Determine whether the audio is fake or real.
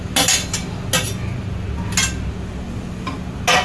real